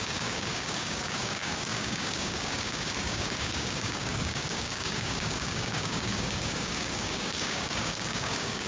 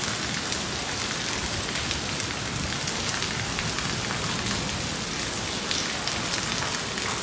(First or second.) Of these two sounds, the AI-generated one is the first